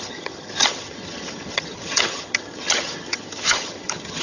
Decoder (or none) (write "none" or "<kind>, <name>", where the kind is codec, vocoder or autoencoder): vocoder, HiFi-GAN